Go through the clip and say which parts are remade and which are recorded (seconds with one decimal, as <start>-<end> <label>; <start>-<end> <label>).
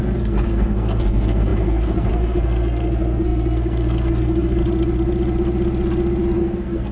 0.0-4.6 remade; 4.6-6.4 recorded; 6.4-6.9 remade